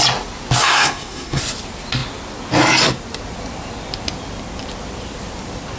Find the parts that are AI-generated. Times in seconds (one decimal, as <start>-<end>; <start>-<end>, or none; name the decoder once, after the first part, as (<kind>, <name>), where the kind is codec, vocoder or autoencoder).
0.6-1.4 (codec, SNAC)